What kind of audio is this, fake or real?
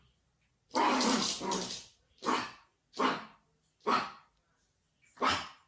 real